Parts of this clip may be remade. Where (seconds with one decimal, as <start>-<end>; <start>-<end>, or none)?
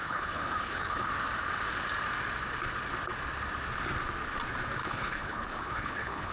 0.0-1.1; 4.8-6.3